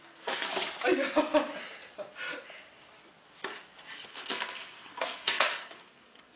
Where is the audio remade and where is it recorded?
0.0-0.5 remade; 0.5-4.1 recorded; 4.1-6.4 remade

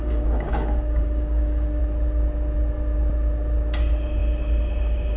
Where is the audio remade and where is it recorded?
0.0-1.8 remade; 1.8-5.2 recorded

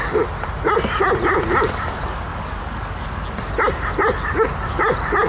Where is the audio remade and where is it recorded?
0.0-2.3 recorded; 2.3-3.2 remade; 3.2-5.3 recorded